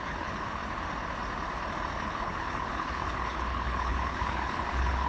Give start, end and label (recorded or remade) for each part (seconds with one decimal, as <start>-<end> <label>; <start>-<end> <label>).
0.0-0.6 remade; 0.6-2.0 recorded; 2.0-5.1 remade